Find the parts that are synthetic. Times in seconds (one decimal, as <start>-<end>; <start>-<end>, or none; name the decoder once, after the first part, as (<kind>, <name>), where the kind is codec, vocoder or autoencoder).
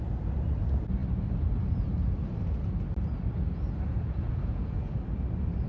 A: 3.9-5.0 (vocoder, Vocos)